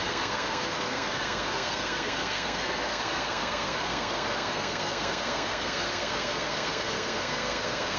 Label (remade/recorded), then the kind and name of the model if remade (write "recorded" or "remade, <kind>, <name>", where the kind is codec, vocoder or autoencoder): remade, codec, SNAC